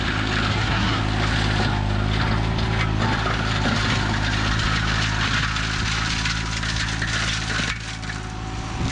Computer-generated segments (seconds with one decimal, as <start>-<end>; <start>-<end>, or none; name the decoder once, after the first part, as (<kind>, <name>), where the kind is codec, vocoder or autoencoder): 0.5-1.0 (codec, SNAC)